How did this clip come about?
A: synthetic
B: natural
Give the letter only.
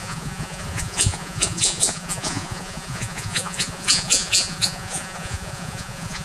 A